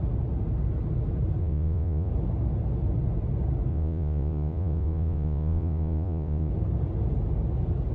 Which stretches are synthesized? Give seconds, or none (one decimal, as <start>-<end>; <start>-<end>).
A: 1.4-2.1; 3.7-6.5